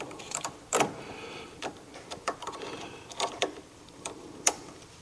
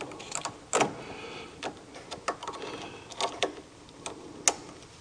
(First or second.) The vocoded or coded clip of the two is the first